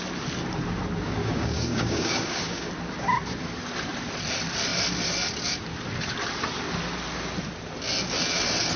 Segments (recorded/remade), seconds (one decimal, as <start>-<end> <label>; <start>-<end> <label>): 0.0-1.2 recorded; 1.2-2.7 remade; 2.7-8.8 recorded